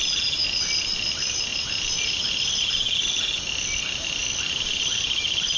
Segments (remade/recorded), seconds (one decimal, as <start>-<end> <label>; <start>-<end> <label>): 0.0-5.6 recorded